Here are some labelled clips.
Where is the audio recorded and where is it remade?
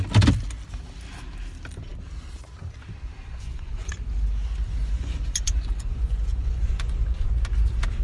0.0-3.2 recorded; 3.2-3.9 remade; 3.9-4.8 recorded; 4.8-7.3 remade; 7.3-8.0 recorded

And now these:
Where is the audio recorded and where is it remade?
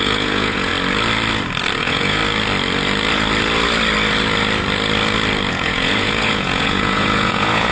0.0-0.7 remade; 0.7-1.8 recorded; 1.8-2.2 remade; 2.2-5.5 recorded; 5.5-7.7 remade